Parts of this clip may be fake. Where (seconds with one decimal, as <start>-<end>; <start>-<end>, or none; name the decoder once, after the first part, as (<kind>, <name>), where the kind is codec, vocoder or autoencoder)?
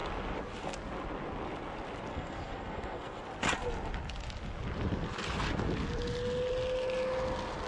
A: 2.1-3.2 (codec, SNAC)